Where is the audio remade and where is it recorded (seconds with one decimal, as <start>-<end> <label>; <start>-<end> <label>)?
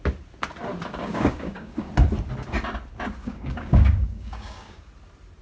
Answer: 0.0-1.0 recorded; 1.0-1.9 remade; 1.9-3.2 recorded; 3.2-4.9 remade; 4.9-5.4 recorded